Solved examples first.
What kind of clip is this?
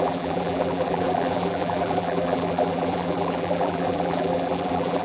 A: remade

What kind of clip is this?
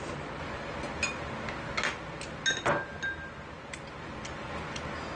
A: recorded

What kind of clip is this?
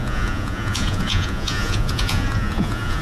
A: remade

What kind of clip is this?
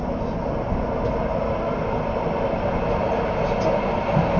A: recorded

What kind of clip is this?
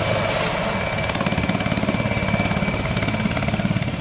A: recorded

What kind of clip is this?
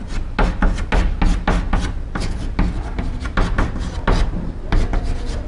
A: recorded